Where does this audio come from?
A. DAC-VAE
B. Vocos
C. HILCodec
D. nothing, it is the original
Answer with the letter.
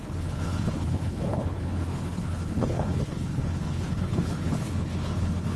C